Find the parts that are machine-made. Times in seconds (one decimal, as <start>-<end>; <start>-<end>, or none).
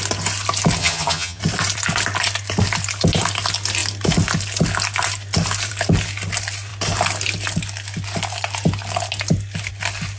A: 0.8-1.4